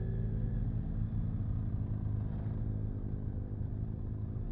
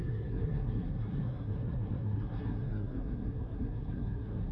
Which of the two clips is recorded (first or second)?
first